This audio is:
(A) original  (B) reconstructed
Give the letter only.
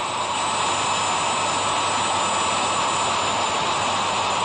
A